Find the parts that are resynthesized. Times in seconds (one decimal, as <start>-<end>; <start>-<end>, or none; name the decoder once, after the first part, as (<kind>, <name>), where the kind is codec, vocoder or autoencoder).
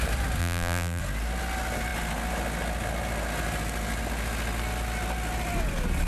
0.4-1.0 (vocoder, BigVGAN v2)